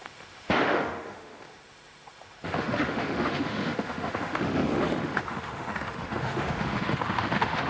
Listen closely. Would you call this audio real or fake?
fake